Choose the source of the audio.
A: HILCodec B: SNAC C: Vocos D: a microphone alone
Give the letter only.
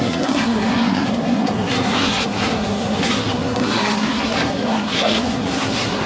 B